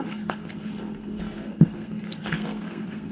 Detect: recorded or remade remade